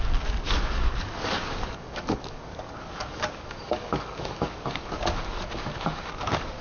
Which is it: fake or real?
fake